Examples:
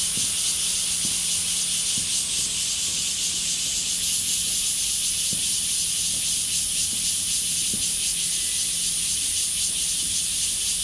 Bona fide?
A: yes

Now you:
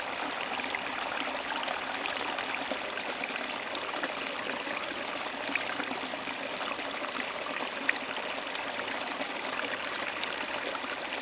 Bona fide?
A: yes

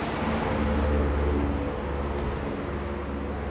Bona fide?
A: yes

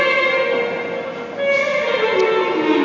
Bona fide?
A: yes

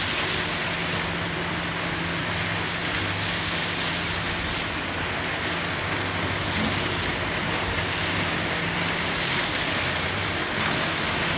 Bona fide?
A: yes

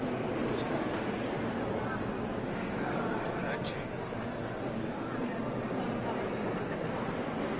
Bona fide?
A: yes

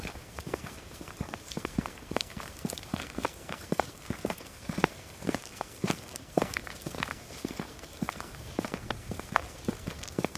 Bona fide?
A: no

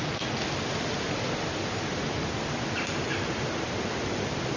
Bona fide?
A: yes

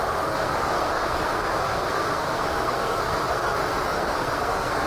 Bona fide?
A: no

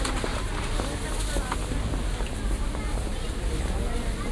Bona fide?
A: yes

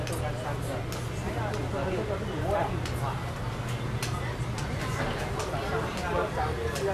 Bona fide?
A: yes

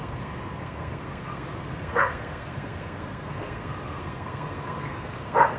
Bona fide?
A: no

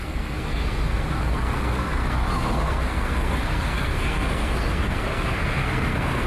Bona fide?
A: no